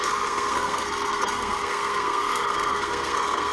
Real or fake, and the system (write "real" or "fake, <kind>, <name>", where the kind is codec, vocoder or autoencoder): fake, codec, SNAC